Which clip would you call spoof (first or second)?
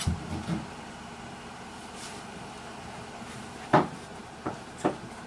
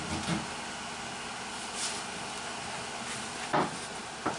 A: first